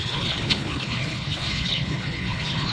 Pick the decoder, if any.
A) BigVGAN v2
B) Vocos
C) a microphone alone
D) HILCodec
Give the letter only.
D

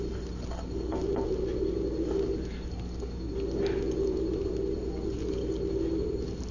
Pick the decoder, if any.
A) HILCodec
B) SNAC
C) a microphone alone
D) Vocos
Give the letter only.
C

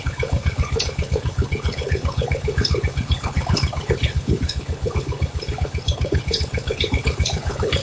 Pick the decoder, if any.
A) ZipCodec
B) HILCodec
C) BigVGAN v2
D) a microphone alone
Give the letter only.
B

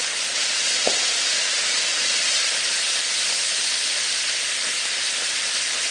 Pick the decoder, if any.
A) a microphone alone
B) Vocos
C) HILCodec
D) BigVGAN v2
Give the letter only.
A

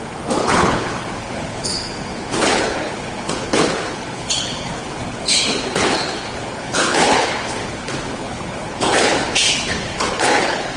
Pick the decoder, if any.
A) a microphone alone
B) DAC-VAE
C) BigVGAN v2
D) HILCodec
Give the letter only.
D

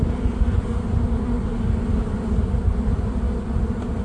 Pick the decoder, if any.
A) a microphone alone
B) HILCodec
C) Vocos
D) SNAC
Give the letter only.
A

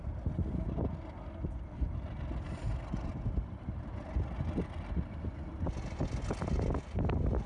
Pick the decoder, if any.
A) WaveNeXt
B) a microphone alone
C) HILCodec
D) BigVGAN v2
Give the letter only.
B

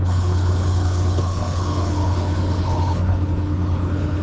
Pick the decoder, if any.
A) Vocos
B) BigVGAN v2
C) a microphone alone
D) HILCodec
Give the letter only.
D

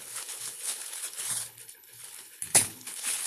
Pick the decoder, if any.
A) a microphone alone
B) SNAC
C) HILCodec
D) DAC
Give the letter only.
C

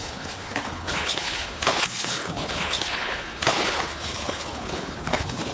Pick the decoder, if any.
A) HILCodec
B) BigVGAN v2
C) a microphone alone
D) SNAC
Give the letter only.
A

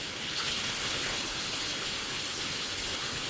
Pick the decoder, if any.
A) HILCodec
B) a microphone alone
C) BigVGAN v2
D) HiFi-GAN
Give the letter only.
A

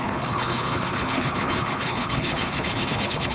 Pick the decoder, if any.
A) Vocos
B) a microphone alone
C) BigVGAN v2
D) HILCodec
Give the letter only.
D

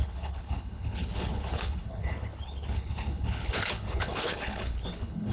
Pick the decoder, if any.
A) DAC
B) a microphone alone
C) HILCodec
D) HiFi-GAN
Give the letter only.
C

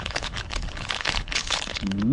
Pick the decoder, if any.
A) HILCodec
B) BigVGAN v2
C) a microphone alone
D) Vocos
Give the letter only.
A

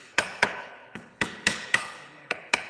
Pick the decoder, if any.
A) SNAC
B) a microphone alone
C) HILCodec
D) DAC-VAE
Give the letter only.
C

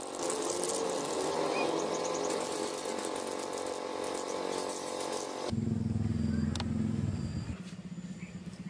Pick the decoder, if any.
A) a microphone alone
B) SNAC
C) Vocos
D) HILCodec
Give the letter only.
A